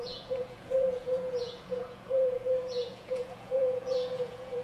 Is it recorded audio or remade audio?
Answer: remade